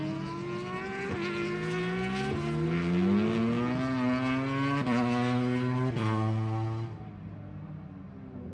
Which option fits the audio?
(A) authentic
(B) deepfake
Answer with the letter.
A